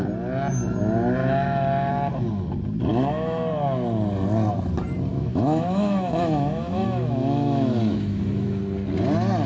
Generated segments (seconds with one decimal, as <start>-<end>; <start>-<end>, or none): 1.2-1.9; 2.9-3.5; 5.1-8.6